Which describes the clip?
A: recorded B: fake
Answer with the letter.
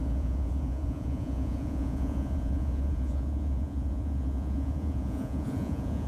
B